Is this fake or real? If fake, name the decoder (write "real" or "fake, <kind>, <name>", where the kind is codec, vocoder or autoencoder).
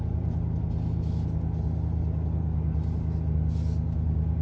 real